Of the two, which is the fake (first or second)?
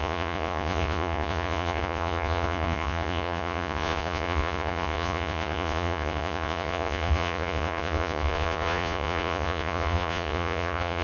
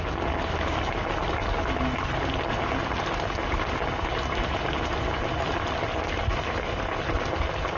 first